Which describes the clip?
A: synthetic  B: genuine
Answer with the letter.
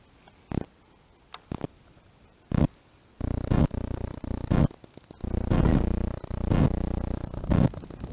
B